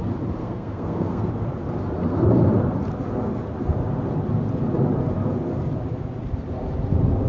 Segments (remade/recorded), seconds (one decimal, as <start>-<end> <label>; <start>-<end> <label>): 0.0-0.4 recorded; 0.4-1.3 remade; 1.3-7.3 recorded